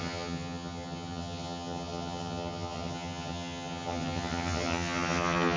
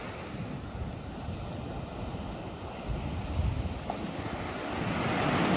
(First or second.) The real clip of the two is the second